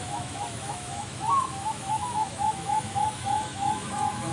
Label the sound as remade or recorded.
remade